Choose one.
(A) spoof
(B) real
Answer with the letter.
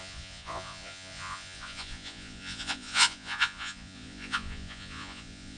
A